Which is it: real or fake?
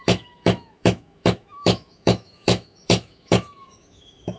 fake